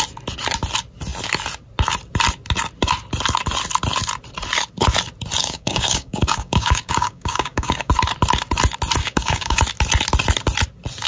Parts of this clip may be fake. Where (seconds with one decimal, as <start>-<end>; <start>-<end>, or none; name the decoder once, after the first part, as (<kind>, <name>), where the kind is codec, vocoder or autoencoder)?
5.4-7.9 (codec, DAC); 9.0-9.6